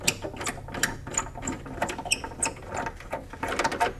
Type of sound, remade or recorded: recorded